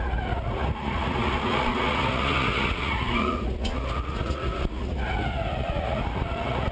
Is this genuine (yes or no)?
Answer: no